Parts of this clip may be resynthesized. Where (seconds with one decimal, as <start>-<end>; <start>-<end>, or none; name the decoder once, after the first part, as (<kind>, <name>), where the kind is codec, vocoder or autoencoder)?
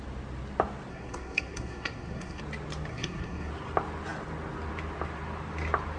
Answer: 0.9-2.4 (codec, SNAC); 2.9-3.5